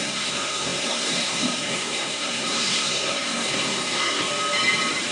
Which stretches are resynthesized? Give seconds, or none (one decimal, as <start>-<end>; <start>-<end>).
0.0-4.3